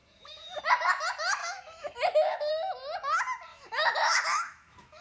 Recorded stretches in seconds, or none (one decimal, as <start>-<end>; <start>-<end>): 0.6-1.4; 2.5-3.5